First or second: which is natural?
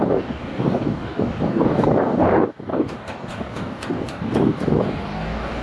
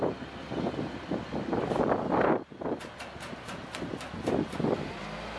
second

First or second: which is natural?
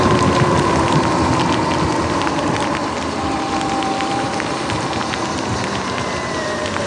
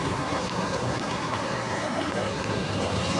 first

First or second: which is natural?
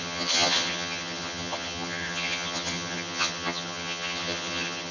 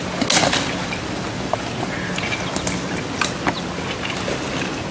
second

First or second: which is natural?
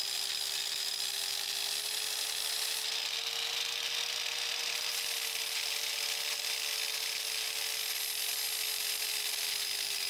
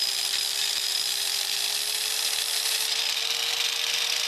first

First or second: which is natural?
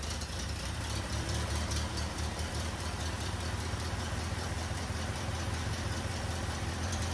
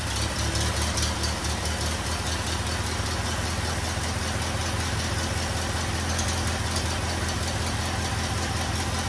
second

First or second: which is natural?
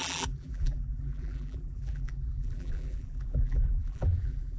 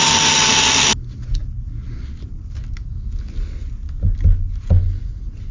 second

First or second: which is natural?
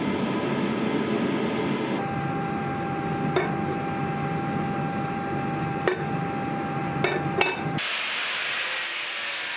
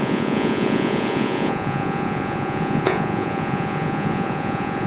first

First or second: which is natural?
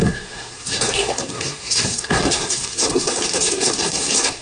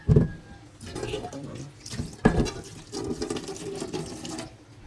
second